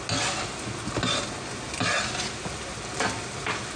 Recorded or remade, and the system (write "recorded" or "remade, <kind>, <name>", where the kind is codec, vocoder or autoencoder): recorded